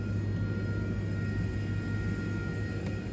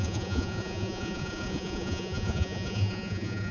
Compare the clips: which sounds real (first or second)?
first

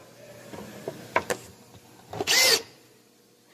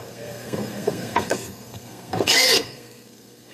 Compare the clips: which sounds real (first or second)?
first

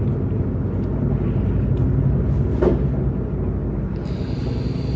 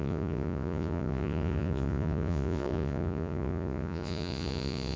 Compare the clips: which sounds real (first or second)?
first